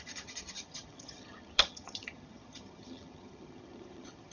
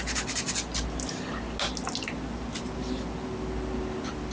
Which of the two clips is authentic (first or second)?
second